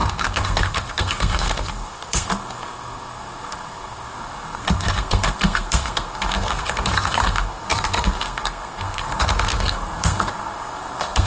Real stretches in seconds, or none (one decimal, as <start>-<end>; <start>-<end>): none